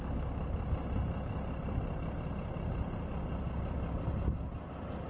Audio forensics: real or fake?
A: real